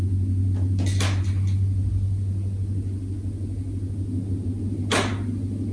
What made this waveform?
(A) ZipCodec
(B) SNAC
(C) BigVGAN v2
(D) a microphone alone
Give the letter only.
D